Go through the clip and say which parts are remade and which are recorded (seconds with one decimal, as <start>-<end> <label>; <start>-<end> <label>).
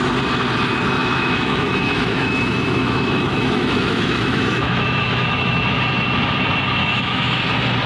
0.0-1.0 recorded; 1.0-5.6 remade; 5.6-6.8 recorded; 6.8-7.4 remade; 7.4-7.9 recorded